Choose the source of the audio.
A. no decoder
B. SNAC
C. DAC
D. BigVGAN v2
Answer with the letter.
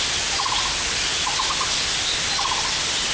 A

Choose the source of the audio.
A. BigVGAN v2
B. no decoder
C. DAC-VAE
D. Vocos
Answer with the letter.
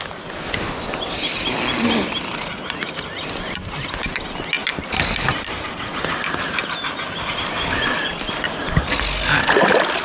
B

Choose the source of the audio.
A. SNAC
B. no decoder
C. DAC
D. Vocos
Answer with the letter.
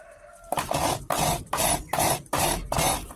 B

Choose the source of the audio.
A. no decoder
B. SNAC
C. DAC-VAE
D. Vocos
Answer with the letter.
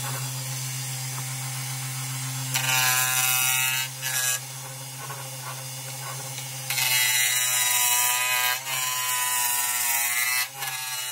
A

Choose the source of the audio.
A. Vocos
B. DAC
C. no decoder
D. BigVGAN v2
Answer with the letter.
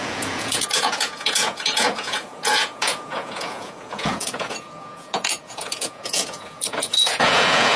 A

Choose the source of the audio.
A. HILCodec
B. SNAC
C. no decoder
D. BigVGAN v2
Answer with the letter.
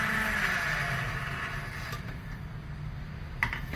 C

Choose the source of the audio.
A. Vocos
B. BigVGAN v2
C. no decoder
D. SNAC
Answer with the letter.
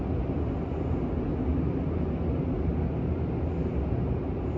C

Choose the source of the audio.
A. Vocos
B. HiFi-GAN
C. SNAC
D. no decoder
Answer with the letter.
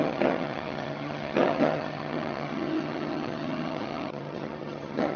B